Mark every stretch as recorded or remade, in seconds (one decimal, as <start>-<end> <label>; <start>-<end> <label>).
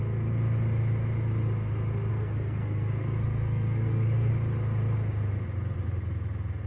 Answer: 0.0-2.1 recorded; 2.1-4.3 remade; 4.3-6.7 recorded